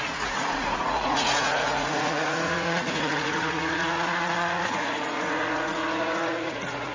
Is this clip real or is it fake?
fake